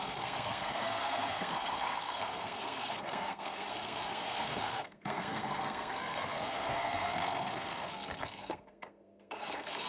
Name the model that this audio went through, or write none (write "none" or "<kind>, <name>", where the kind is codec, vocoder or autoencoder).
codec, SNAC